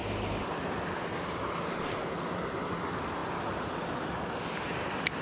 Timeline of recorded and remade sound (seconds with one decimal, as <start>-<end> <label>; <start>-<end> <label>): 0.0-5.2 recorded